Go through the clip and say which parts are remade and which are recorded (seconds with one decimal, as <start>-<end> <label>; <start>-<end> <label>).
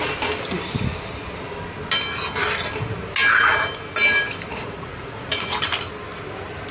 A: 0.0-4.5 recorded; 4.5-5.6 remade; 5.6-6.7 recorded